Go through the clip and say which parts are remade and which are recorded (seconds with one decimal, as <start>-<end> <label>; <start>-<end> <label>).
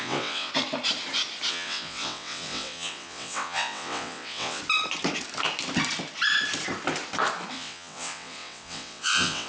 0.0-0.5 remade; 0.5-1.5 recorded; 1.5-4.6 remade; 4.6-7.5 recorded; 7.5-9.5 remade